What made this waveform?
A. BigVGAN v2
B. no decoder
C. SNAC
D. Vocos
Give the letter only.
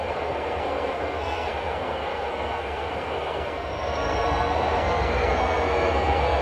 C